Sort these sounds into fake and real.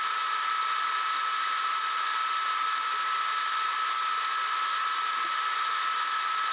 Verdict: real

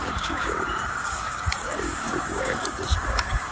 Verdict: fake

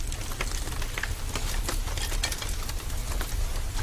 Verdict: real